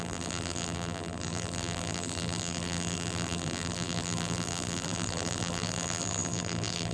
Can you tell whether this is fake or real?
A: fake